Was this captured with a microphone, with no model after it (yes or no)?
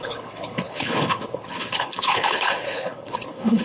no